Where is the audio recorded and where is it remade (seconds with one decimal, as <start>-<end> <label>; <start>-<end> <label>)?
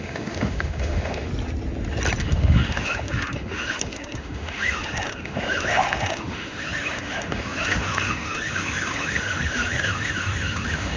0.0-1.3 remade; 1.3-2.2 recorded; 2.2-11.0 remade